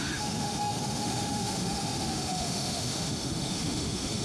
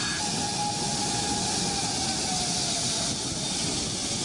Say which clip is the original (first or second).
second